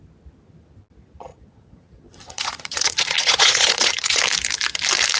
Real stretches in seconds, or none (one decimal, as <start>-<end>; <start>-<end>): 0.0-1.3; 4.2-5.2